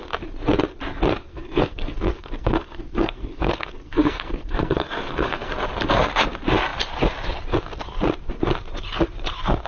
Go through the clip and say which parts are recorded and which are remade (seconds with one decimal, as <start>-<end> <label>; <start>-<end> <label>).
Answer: 0.0-1.3 recorded; 1.3-5.5 remade; 5.5-9.7 recorded